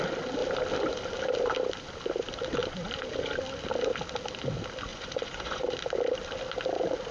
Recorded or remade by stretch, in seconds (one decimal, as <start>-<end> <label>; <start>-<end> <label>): 0.0-4.9 recorded; 4.9-5.6 remade; 5.6-7.1 recorded